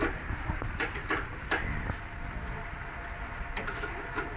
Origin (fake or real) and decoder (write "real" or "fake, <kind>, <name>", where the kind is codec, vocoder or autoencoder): fake, vocoder, BigVGAN v2